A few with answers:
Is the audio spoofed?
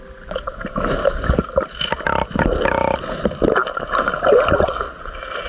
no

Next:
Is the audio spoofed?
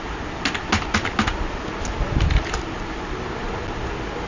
no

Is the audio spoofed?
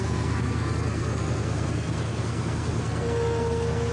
yes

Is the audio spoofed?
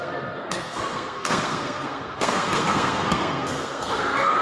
yes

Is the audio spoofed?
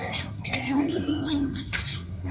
yes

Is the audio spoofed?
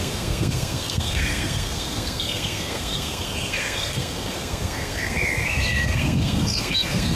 yes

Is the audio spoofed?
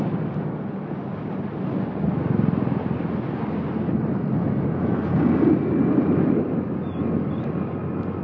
no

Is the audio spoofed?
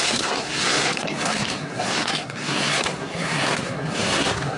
yes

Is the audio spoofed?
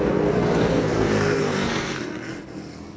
yes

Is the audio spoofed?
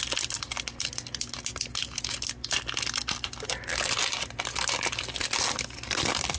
no